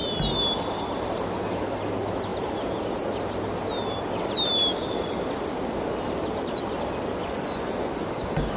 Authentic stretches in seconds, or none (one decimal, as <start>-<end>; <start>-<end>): 0.0-7.2; 7.9-8.6